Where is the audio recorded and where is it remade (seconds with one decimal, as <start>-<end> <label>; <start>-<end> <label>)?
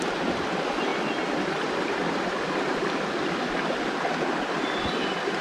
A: 0.0-0.9 remade; 0.9-1.6 recorded; 1.6-5.4 remade